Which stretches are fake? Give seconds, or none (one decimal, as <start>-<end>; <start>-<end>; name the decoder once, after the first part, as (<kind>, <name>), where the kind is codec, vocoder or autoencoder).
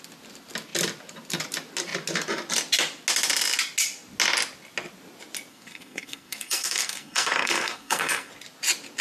5.5-8.3 (codec, SNAC)